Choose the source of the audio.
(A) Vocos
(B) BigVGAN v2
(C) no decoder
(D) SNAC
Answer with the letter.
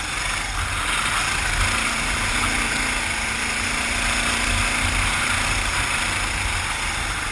C